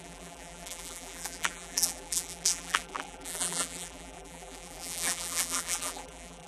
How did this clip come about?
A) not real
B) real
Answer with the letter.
A